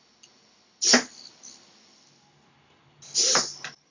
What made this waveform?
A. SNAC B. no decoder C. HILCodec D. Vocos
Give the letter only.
B